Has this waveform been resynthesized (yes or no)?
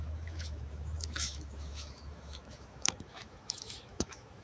yes